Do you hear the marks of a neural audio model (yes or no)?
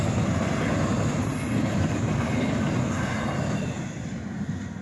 no